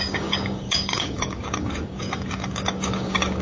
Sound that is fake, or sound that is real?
fake